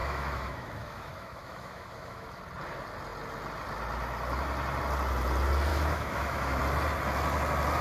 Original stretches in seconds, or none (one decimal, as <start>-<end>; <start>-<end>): 2.4-5.7; 6.6-7.8